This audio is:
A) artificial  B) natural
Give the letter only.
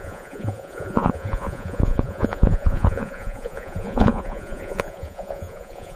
A